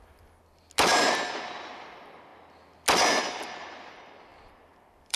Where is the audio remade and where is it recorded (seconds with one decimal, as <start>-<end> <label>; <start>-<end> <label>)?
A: 0.0-4.3 recorded; 4.3-5.2 remade